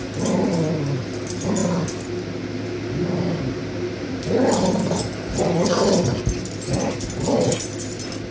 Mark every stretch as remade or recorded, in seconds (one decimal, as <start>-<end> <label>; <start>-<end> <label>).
0.0-8.3 recorded